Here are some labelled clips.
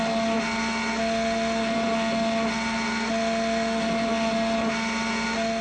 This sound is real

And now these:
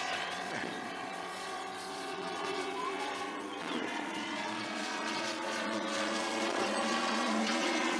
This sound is fake